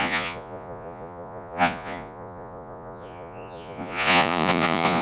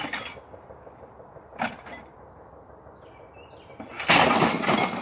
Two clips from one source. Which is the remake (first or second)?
first